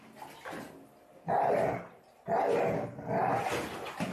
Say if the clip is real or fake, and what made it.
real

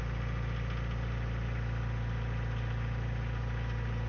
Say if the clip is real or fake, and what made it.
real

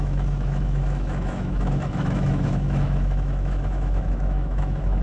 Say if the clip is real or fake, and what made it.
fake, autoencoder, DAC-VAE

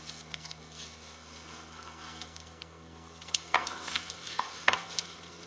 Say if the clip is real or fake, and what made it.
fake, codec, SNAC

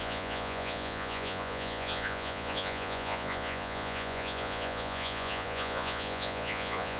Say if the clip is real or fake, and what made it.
fake, vocoder, Vocos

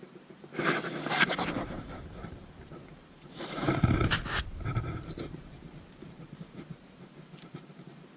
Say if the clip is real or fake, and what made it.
fake, vocoder, BigVGAN v2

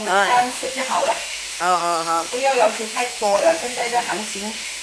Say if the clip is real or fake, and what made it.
fake, autoencoder, DAC-VAE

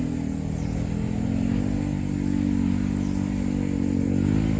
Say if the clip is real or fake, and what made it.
real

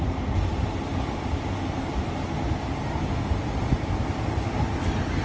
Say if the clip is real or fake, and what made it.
real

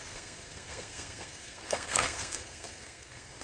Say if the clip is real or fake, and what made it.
fake, codec, SNAC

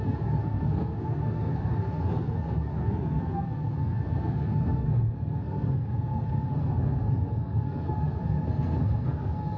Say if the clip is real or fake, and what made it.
fake, codec, SNAC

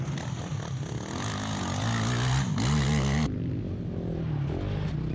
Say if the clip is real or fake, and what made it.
real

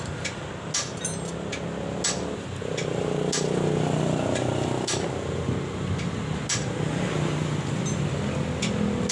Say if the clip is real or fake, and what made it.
real